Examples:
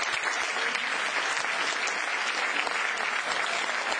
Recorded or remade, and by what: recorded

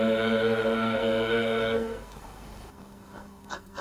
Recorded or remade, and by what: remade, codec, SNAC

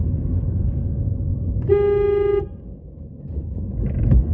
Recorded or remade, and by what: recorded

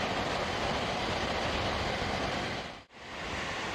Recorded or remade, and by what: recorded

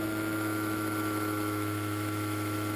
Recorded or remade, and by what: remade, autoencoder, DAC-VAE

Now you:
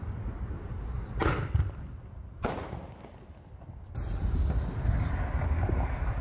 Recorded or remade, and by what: recorded